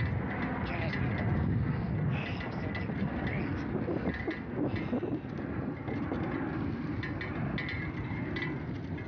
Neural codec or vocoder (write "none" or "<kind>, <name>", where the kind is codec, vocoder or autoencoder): none